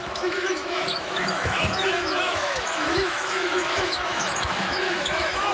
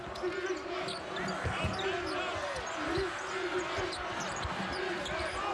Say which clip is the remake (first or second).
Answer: first